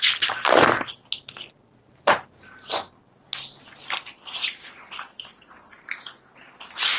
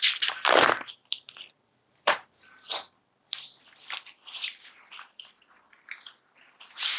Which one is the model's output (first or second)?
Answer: second